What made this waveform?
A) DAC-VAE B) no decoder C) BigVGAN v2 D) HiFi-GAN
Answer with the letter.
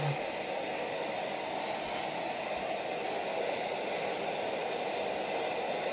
B